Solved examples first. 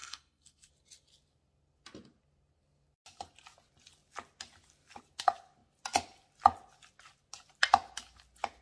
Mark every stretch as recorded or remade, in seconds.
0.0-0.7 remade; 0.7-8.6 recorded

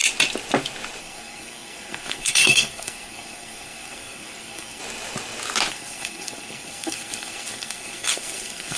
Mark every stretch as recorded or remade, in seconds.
0.0-1.0 recorded; 1.0-4.8 remade; 4.8-5.7 recorded; 5.7-8.8 remade

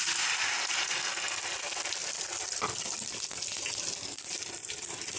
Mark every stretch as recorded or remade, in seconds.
0.0-5.2 recorded